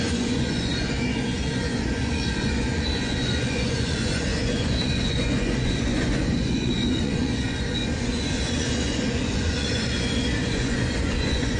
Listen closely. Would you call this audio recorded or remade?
remade